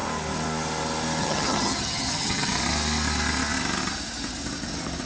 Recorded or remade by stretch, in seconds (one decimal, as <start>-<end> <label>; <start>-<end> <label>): 0.0-1.2 recorded; 1.2-2.5 remade; 2.5-5.1 recorded